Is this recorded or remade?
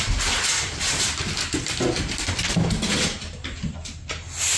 recorded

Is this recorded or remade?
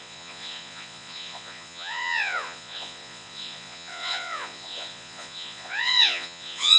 remade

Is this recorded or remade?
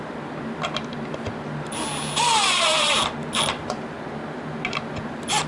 recorded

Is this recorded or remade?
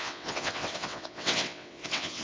remade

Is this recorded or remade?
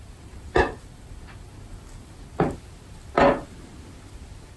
recorded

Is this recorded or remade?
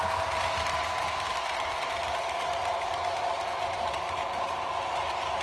recorded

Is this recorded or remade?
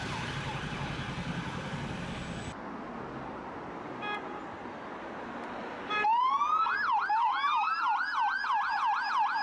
recorded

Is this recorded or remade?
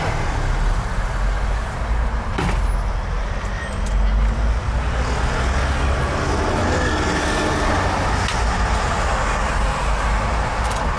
recorded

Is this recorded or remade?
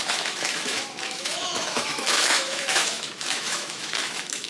remade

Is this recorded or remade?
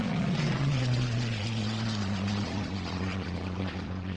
remade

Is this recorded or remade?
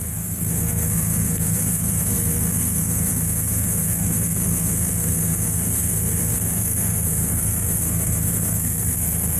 remade